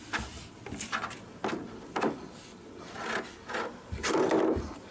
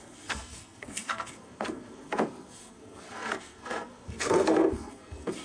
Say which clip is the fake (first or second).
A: second